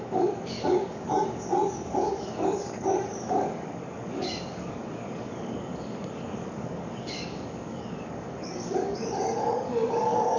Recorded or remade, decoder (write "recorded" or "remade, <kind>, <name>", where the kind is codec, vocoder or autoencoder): remade, codec, DAC